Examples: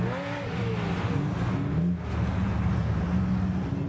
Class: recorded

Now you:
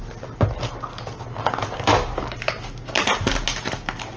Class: recorded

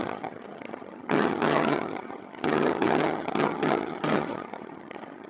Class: remade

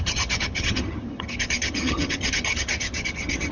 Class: remade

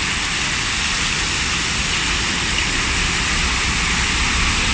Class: recorded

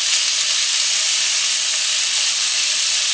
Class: recorded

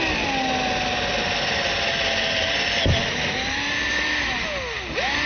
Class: recorded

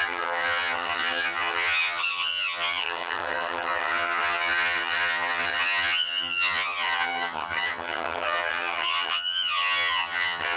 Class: remade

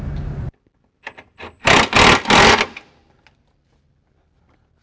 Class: recorded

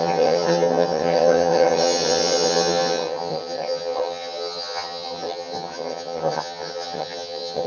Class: remade